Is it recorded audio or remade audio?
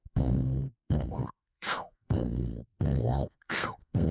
remade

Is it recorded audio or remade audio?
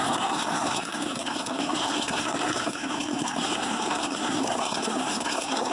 remade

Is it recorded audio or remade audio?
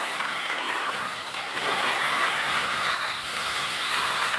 remade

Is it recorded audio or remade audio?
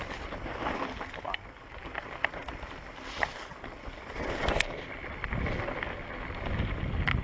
recorded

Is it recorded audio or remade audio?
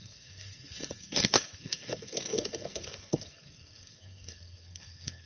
remade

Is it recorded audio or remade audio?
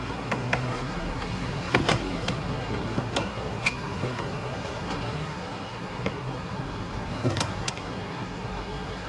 remade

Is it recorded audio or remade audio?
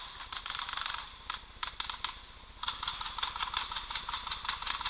recorded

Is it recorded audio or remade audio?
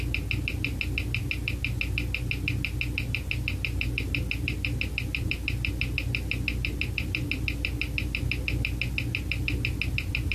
recorded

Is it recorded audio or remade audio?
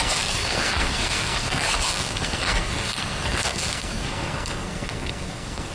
remade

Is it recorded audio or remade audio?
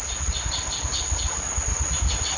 recorded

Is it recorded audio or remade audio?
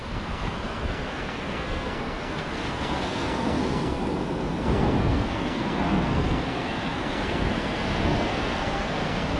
remade